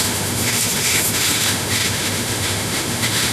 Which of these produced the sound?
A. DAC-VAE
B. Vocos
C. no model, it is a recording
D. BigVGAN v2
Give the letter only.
A